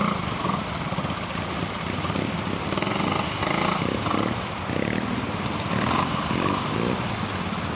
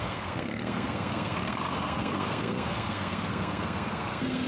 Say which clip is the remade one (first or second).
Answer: second